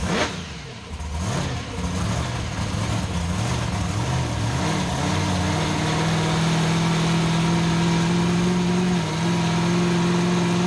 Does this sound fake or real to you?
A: real